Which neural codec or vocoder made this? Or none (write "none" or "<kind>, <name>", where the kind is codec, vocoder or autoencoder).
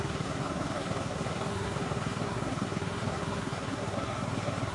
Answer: codec, SNAC